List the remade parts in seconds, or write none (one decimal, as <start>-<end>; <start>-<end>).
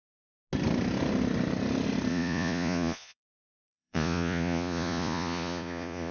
2.1-6.1